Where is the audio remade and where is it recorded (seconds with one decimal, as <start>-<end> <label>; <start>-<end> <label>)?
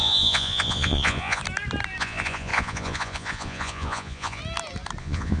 0.0-1.4 remade; 1.4-2.0 recorded; 2.0-4.4 remade; 4.4-5.0 recorded; 5.0-5.4 remade